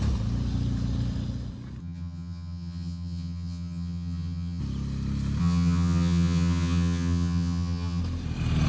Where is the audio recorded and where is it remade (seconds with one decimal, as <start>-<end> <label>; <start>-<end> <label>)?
0.0-1.8 recorded; 1.8-4.6 remade; 4.6-5.4 recorded; 5.4-8.0 remade; 8.0-8.7 recorded